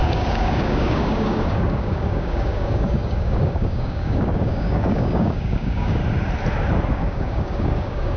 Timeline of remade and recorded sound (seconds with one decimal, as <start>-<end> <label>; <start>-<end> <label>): 0.0-6.0 remade; 6.0-6.9 recorded; 6.9-8.2 remade

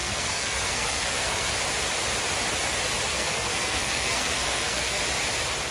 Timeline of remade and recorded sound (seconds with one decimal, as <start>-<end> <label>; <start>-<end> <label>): 0.0-1.5 remade; 1.5-3.1 recorded; 3.1-5.0 remade; 5.0-5.7 recorded

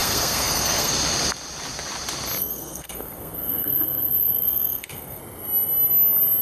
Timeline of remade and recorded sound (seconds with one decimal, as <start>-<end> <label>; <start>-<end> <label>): 0.0-0.9 remade; 0.9-2.5 recorded; 2.5-5.2 remade; 5.2-6.4 recorded

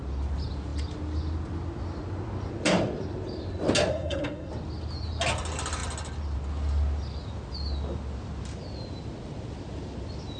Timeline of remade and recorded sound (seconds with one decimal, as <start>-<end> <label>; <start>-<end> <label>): 0.0-3.9 recorded; 3.9-4.5 remade; 4.5-10.4 recorded

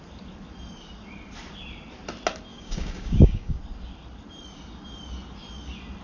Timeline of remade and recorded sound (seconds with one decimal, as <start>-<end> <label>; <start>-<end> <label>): 0.0-2.5 recorded; 2.5-3.6 remade; 3.6-6.0 recorded

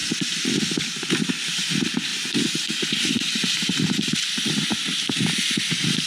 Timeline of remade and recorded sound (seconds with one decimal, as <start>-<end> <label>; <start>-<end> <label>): 0.0-6.1 recorded